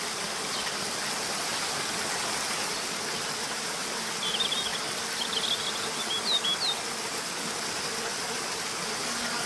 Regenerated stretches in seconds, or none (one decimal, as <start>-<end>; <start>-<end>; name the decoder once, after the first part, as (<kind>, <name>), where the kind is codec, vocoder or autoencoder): 1.5-2.6 (vocoder, BigVGAN v2)

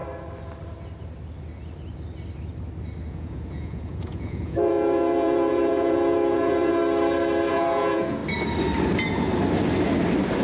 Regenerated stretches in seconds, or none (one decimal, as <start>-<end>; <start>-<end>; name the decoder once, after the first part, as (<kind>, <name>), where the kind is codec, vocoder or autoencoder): 3.1-6.8 (vocoder, Vocos); 7.5-8.2

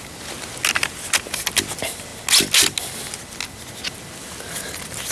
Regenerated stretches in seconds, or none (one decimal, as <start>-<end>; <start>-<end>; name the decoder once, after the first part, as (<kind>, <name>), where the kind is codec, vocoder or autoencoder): none

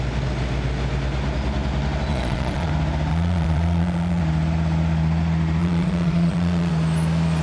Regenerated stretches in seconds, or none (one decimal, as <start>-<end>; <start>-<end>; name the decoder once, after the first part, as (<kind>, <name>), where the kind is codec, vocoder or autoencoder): 2.1-2.7 (vocoder, Vocos); 3.1-4.2; 5.6-6.7